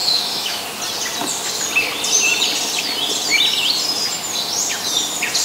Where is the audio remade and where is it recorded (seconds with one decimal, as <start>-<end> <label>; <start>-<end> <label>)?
0.0-0.6 remade; 0.6-5.4 recorded